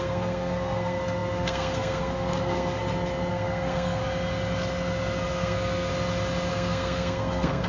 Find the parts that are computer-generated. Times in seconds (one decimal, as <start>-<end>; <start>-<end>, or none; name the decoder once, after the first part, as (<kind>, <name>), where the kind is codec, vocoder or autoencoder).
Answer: 0.0-2.8 (codec, SNAC); 3.3-4.0; 5.3-5.9; 6.5-7.7